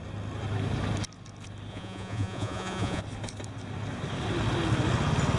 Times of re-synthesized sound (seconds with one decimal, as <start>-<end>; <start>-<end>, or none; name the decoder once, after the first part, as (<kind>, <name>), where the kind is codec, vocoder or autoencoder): 1.7-3.0 (vocoder, Vocos)